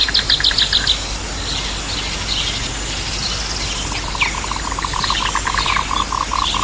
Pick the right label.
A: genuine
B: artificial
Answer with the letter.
A